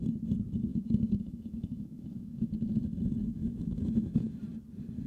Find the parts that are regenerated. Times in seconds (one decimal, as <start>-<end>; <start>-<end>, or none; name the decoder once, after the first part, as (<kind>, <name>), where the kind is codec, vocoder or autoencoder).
0.7-2.5 (autoencoder, DAC-VAE); 3.2-4.4